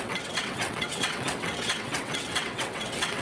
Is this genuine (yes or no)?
no